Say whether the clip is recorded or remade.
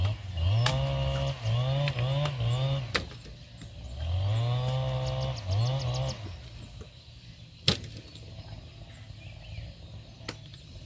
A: recorded